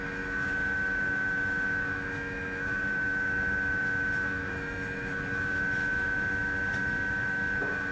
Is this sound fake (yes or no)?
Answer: yes